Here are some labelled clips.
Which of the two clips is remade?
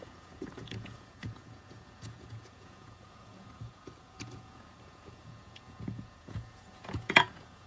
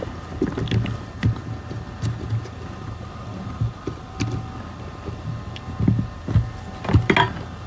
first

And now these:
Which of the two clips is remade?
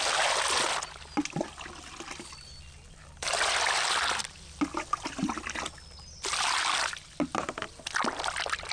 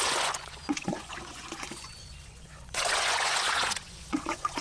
second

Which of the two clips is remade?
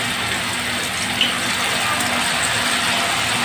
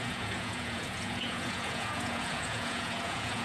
second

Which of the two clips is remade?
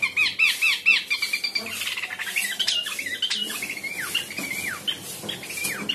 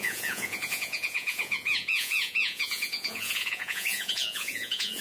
second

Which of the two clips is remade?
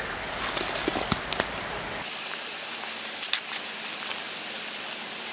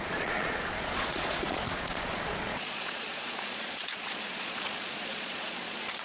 second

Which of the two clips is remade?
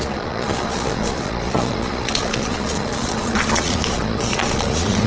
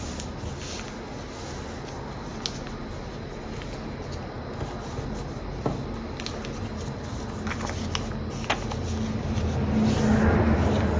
first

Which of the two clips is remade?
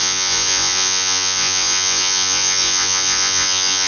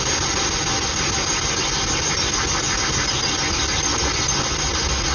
first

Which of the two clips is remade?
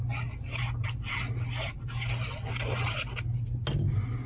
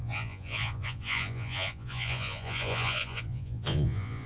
second